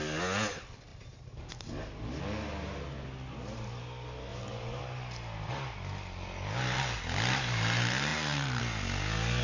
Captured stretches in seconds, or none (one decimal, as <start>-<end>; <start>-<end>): 0.0-0.9; 1.5-4.3; 4.8-8.1; 8.6-9.4